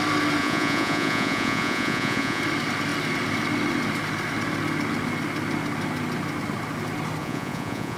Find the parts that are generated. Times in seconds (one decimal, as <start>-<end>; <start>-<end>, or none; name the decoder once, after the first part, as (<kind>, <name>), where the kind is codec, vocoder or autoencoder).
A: 0.4-2.4 (vocoder, Vocos); 7.2-8.0